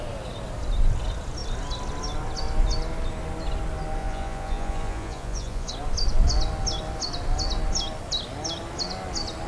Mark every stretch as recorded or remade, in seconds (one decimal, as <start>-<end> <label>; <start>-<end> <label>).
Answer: 0.0-4.0 recorded; 4.0-5.7 remade; 5.7-9.5 recorded